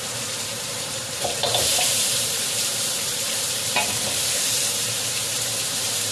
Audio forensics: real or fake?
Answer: fake